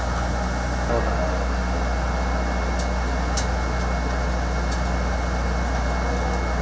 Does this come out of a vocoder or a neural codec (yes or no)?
no